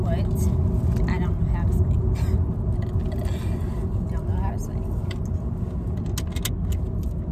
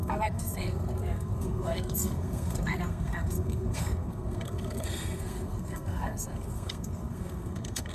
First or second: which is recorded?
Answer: first